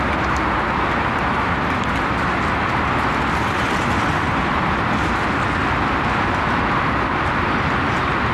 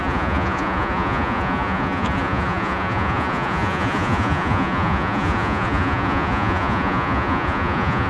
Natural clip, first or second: first